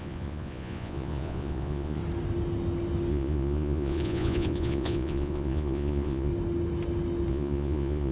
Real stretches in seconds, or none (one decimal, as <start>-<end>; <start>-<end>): 2.0-3.1; 6.3-7.3